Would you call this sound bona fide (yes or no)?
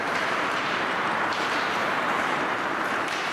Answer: no